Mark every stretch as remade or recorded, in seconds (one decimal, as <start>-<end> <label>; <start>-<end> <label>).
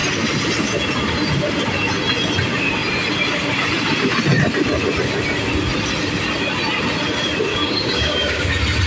0.0-7.5 recorded; 7.5-8.5 remade; 8.5-8.9 recorded